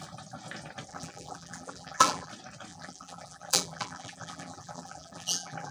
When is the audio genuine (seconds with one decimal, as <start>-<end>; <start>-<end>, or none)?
0.0-0.9; 2.3-2.7